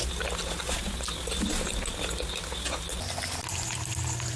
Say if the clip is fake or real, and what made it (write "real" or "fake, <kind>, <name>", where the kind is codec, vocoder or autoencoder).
real